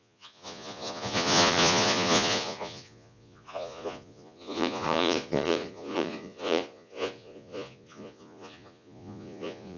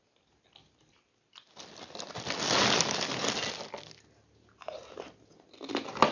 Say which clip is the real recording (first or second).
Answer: second